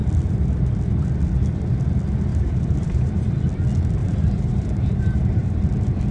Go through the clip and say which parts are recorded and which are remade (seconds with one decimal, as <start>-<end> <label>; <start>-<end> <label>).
0.0-2.3 recorded; 2.3-3.3 remade; 3.3-4.0 recorded; 4.0-5.6 remade; 5.6-6.1 recorded